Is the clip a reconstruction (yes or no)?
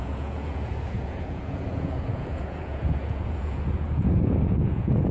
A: yes